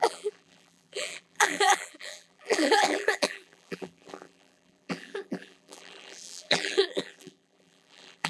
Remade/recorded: remade